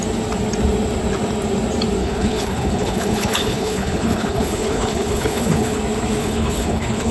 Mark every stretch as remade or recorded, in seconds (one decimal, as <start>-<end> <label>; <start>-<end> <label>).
0.0-2.0 recorded; 2.0-5.8 remade; 5.8-6.2 recorded; 6.2-7.1 remade